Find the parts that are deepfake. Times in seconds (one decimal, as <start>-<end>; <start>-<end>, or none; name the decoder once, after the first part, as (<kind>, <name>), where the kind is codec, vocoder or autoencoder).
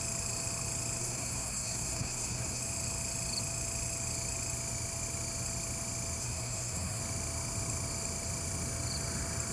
1.0-2.6 (codec, SNAC); 6.2-7.0